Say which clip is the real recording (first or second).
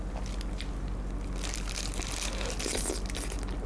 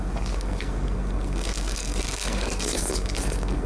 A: first